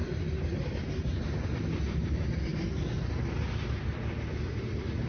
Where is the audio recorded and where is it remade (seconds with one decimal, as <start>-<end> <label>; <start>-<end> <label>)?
0.0-5.1 recorded